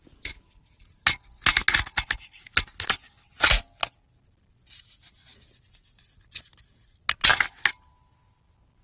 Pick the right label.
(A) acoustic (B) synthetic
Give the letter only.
A